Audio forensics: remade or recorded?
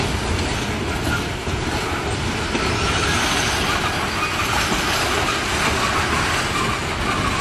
recorded